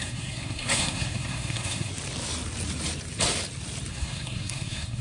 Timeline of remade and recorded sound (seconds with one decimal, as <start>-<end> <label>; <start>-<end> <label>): 0.0-1.9 remade; 1.9-3.9 recorded; 3.9-5.0 remade